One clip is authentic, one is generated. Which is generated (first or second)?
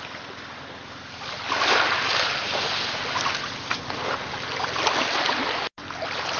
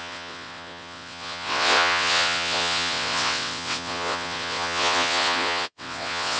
second